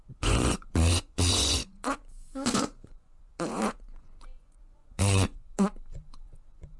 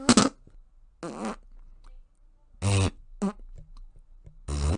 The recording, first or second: second